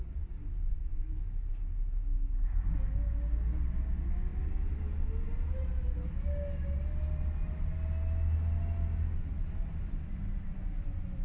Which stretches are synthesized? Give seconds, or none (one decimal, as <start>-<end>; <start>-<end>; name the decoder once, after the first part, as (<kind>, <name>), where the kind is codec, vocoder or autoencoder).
4.3-4.8 (vocoder, BigVGAN v2)